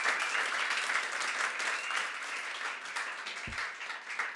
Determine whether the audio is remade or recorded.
recorded